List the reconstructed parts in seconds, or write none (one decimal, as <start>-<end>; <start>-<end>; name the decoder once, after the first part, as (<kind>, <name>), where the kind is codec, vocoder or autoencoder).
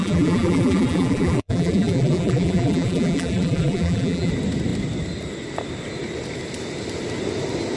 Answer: 0.0-4.3 (vocoder, BigVGAN v2)